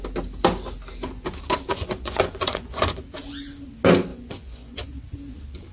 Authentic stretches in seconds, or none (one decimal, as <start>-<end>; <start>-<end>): 0.0-1.7; 3.0-4.1; 4.9-5.7